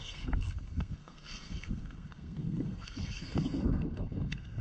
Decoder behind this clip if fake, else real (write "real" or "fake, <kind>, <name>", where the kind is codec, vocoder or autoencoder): fake, codec, SNAC